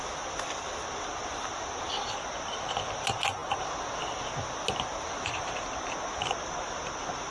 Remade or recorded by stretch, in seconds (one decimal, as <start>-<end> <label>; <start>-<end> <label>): 0.0-7.3 recorded